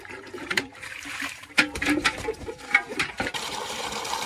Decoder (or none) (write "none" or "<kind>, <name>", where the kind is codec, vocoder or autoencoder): vocoder, BigVGAN v2